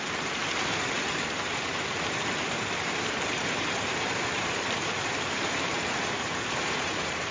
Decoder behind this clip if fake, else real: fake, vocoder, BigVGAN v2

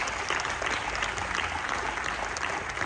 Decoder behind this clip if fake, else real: real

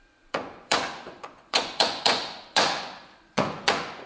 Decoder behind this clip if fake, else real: fake, vocoder, Vocos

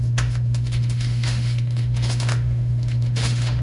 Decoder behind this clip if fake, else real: fake, autoencoder, DAC-VAE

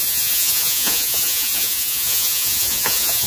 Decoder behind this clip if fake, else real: fake, vocoder, Vocos